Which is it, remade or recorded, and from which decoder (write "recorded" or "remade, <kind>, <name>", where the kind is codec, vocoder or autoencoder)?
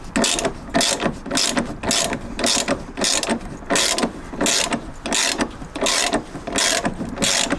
recorded